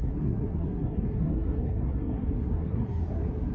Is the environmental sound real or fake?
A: fake